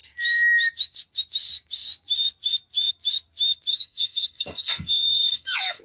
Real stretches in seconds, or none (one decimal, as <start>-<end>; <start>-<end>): 0.0-3.7